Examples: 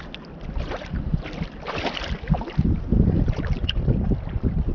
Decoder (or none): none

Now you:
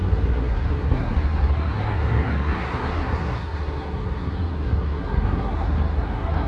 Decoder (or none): codec, SNAC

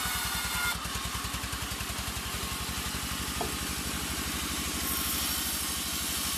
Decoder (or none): none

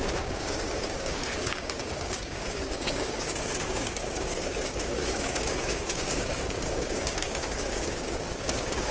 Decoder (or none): codec, DAC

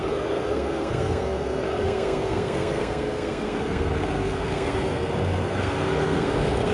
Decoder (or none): codec, SNAC